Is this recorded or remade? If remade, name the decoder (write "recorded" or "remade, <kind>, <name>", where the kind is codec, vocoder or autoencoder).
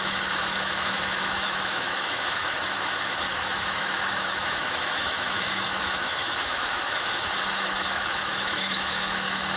remade, autoencoder, DAC-VAE